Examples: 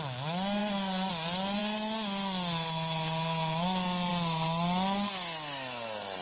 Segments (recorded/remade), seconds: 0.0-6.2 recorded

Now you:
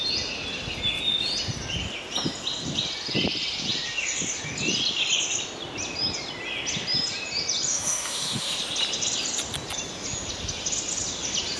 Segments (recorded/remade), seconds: 0.0-7.7 recorded; 7.7-8.6 remade; 8.6-11.6 recorded

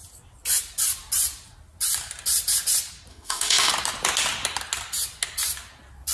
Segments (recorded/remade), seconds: 0.0-3.1 recorded; 3.1-3.7 remade; 3.7-6.1 recorded

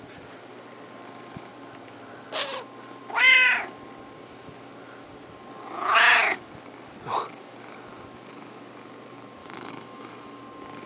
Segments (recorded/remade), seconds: 0.0-9.4 recorded; 9.4-10.4 remade; 10.4-10.9 recorded

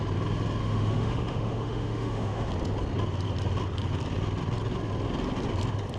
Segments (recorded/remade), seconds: 0.0-0.6 recorded; 0.6-2.5 remade; 2.5-6.0 recorded

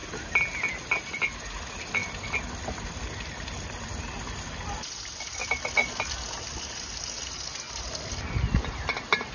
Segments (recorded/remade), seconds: 0.0-9.3 recorded

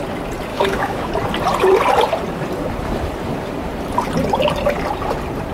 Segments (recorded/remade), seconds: 0.0-0.5 recorded; 0.5-1.1 remade; 1.1-5.5 recorded